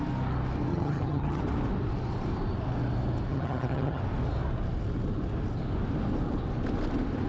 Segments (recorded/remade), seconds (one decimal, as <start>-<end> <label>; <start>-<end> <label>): 0.0-0.7 recorded; 0.7-1.4 remade; 1.4-3.3 recorded; 3.3-4.0 remade; 4.0-7.3 recorded